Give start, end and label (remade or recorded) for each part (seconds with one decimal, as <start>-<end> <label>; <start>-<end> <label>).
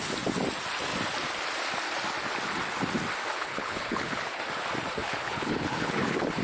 0.0-3.3 recorded; 3.3-4.4 remade; 4.4-5.0 recorded; 5.0-6.4 remade